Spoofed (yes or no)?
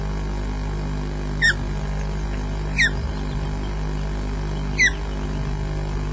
no